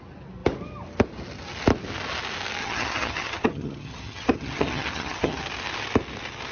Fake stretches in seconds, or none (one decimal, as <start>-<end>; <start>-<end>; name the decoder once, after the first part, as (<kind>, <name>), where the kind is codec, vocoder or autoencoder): 2.6-5.4 (vocoder, HiFi-GAN)